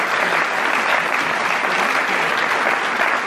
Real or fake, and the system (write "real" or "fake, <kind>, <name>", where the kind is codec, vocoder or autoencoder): real